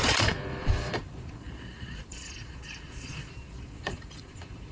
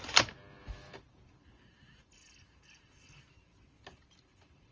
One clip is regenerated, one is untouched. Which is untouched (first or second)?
second